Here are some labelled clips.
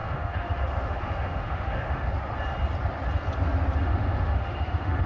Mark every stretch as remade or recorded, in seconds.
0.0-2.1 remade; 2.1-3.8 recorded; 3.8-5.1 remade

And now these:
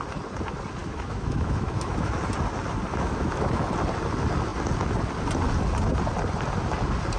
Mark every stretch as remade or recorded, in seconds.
0.0-0.8 recorded; 0.8-2.2 remade; 2.2-2.9 recorded; 2.9-3.7 remade; 3.7-7.2 recorded

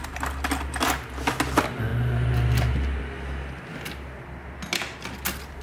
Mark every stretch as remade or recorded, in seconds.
0.0-5.6 recorded